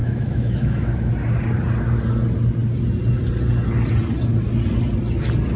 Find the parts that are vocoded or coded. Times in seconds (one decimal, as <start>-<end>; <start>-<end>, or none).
0.0-1.1

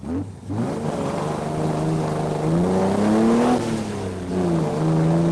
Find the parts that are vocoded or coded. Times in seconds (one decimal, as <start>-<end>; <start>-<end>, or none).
none

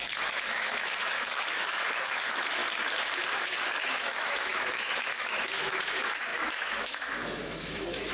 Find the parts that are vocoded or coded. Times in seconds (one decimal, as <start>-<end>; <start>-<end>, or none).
0.0-2.6; 3.3-8.1

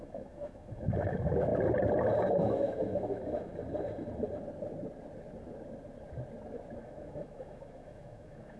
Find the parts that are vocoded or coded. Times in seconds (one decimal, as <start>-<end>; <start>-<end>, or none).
0.0-1.5; 2.4-3.5; 6.8-8.6

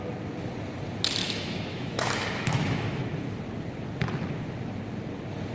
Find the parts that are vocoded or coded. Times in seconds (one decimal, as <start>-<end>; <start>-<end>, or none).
1.2-3.4